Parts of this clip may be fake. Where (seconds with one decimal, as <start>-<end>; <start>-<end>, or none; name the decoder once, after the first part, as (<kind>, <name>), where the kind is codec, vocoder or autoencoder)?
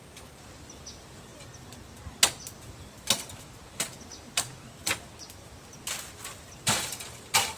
0.0-1.3 (vocoder, BigVGAN v2); 2.7-4.8; 6.5-7.6